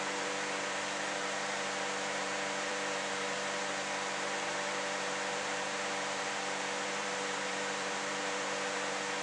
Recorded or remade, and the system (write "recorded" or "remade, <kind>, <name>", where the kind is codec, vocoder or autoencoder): remade, vocoder, BigVGAN v2